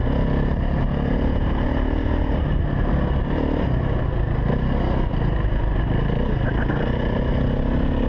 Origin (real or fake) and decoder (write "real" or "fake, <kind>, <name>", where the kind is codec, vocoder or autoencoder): real